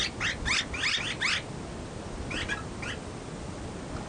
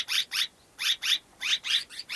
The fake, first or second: second